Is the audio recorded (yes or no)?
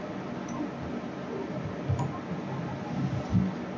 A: yes